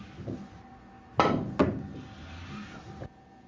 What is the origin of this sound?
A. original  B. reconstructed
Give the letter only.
A